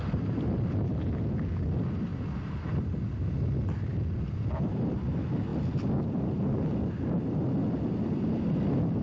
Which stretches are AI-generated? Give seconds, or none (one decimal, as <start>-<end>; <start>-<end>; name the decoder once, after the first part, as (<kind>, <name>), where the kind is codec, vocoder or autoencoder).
none